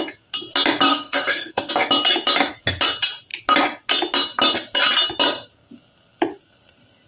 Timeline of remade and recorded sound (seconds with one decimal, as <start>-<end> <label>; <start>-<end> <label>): 0.0-0.9 recorded; 0.9-1.7 remade; 1.7-7.1 recorded